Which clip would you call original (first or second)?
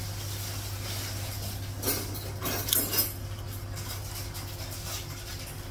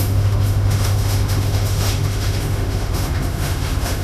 first